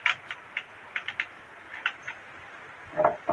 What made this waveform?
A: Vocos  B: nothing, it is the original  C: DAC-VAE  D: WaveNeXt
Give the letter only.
B